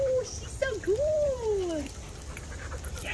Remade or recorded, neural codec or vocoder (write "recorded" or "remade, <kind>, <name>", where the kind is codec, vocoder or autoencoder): remade, vocoder, BigVGAN v2